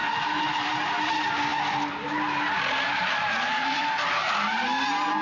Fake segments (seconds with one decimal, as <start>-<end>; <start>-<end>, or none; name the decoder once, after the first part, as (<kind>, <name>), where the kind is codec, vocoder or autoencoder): none